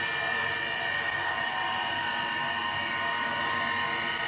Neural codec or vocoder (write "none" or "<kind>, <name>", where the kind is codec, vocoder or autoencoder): none